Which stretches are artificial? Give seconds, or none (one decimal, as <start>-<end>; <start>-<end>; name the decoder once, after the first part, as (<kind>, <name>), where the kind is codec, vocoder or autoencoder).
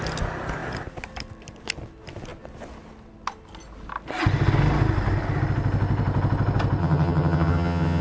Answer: 6.8-8.0 (vocoder, HiFi-GAN)